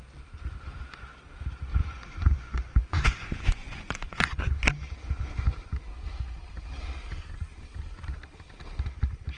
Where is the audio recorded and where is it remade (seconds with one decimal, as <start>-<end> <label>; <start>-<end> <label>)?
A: 0.0-1.7 recorded; 1.7-4.4 remade; 4.4-9.4 recorded